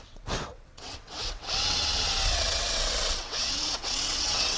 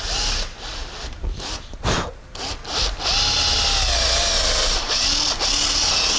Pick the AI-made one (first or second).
first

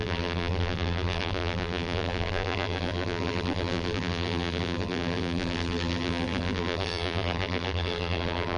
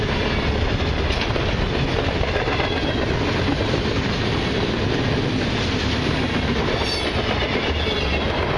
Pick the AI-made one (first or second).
first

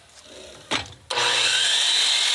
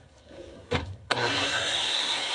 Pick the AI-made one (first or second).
second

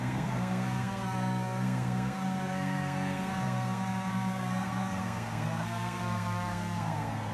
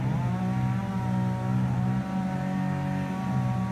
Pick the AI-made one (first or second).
first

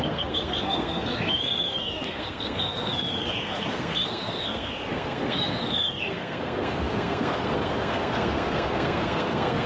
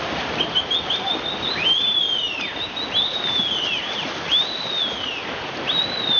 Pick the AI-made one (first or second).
first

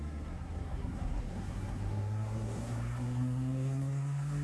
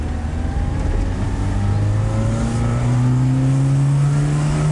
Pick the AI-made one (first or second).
first